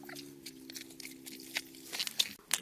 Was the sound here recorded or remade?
recorded